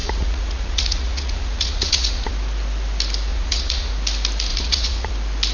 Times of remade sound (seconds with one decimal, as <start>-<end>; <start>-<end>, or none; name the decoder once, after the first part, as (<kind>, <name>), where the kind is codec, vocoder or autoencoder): 0.0-2.3 (vocoder, Vocos); 3.3-3.9; 4.5-5.1